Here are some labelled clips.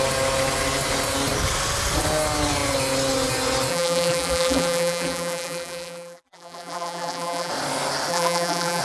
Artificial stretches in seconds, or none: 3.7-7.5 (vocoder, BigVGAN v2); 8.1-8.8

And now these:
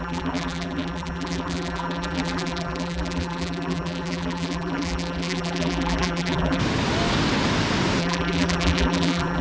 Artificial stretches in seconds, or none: 0.0-6.6 (vocoder, BigVGAN v2); 8.0-9.4

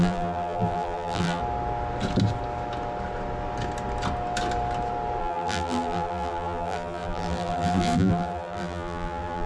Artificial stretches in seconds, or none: 0.0-1.4 (vocoder, BigVGAN v2); 5.2-9.5

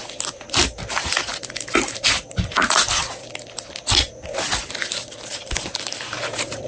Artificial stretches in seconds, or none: 0.6-1.3 (vocoder, BigVGAN v2); 5.3-6.7

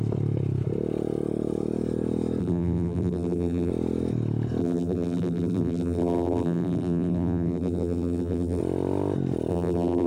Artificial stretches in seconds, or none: 2.4-3.7 (vocoder, BigVGAN v2); 4.6-8.6; 9.5-10.1

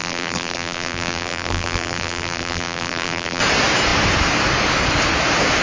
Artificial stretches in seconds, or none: 0.0-3.4 (vocoder, BigVGAN v2)

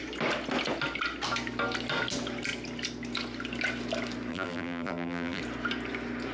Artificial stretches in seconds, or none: 4.3-5.4 (vocoder, BigVGAN v2)

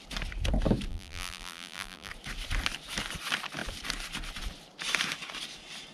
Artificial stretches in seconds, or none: 0.9-2.1 (vocoder, BigVGAN v2)